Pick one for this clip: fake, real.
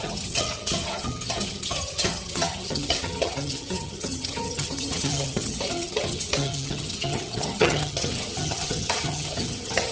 fake